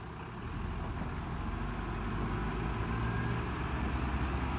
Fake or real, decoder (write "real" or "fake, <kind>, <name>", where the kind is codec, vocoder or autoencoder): real